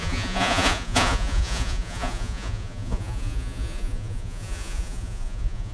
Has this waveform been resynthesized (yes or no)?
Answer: yes